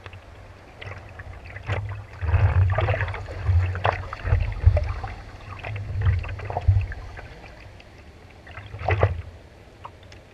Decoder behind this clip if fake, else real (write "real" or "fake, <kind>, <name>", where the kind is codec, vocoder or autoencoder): real